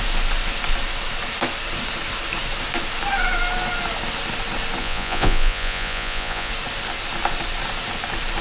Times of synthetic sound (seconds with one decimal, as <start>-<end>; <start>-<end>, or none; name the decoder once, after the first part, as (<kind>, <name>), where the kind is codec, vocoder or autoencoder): 4.8-6.5 (vocoder, Vocos)